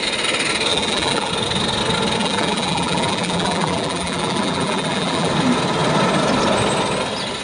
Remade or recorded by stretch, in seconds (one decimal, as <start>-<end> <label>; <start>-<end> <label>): 0.0-0.7 recorded; 0.7-1.3 remade; 1.3-2.2 recorded; 2.2-5.3 remade; 5.3-7.4 recorded